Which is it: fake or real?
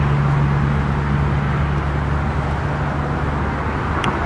real